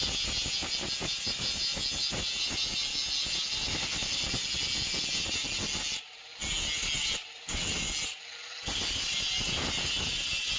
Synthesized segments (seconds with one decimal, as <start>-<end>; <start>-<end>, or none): none